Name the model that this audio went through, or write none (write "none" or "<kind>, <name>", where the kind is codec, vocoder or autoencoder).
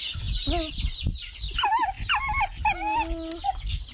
none